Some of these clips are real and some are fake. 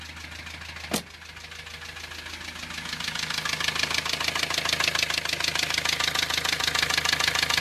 real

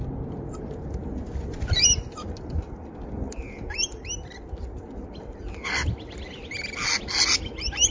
real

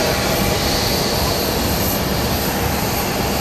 real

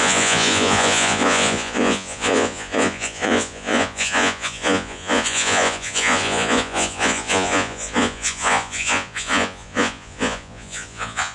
fake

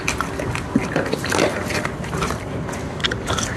real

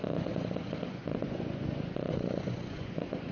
fake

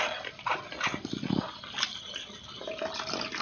real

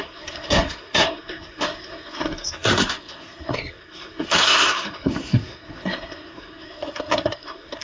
fake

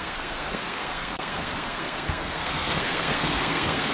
fake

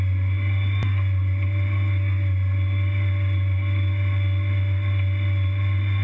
real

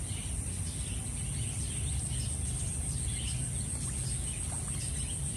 real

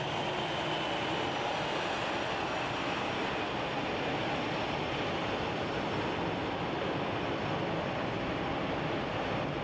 real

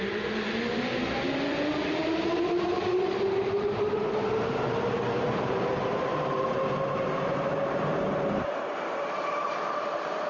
fake